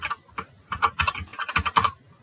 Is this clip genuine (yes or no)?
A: yes